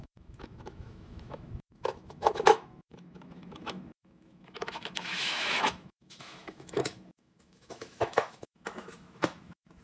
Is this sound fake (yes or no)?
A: yes